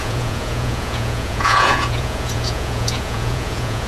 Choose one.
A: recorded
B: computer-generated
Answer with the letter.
B